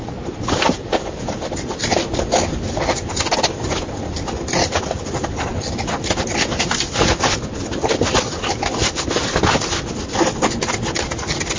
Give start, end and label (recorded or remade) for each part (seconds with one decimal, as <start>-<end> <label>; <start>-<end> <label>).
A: 0.0-11.6 recorded